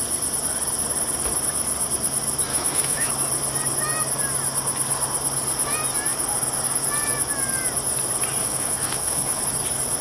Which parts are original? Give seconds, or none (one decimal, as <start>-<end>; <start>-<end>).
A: 0.0-2.5; 3.1-8.4; 9.4-10.0